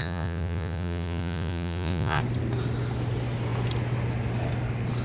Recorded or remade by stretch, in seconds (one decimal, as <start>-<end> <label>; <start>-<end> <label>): 0.0-2.2 remade; 2.2-5.0 recorded